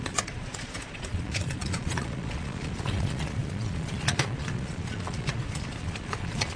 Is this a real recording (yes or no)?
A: no